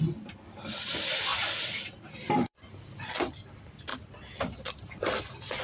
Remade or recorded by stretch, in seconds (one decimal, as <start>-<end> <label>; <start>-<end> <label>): 0.0-1.3 recorded; 1.3-2.6 remade; 2.6-3.9 recorded; 3.9-5.6 remade